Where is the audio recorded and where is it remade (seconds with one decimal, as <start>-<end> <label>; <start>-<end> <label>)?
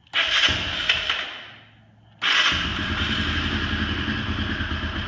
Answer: 0.0-5.1 recorded